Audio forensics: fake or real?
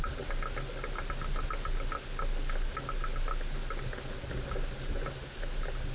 real